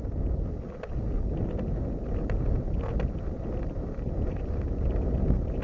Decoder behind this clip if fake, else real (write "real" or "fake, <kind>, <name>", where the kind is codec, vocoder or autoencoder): real